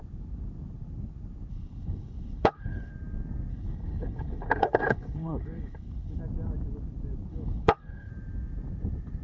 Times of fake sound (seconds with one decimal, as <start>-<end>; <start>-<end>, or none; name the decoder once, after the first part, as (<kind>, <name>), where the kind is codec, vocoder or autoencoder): 1.5-2.9 (codec, HILCodec); 3.5-6.2; 7.3-8.1